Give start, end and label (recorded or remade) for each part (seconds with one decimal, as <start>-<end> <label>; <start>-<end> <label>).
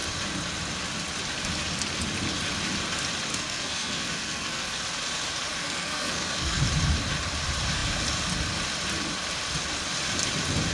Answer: 0.0-3.3 recorded; 3.3-4.8 remade; 4.8-5.6 recorded; 5.6-6.6 remade; 6.6-10.7 recorded